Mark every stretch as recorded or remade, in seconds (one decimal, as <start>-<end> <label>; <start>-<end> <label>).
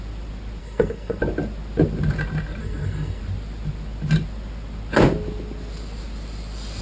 0.0-0.6 recorded; 0.6-1.2 remade; 1.2-2.6 recorded; 2.6-3.2 remade; 3.2-6.8 recorded